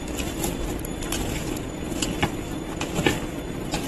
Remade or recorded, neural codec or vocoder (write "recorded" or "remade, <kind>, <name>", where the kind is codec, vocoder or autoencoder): recorded